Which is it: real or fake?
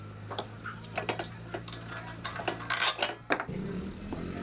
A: real